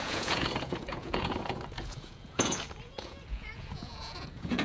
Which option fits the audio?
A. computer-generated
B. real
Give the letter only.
A